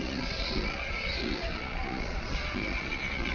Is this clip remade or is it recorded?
remade